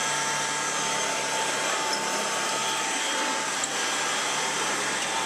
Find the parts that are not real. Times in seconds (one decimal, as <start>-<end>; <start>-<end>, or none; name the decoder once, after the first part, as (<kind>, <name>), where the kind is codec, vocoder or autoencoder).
1.4-2.6 (vocoder, BigVGAN v2); 4.6-5.3